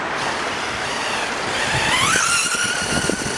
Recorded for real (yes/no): yes